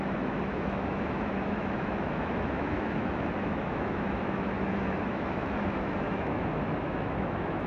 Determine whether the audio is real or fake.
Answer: fake